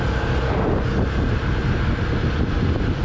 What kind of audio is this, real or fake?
real